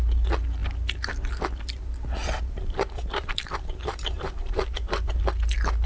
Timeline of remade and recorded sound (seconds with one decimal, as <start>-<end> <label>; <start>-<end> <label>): 0.0-2.2 recorded; 2.2-5.2 remade; 5.2-5.9 recorded